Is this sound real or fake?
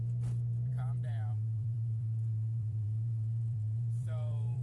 fake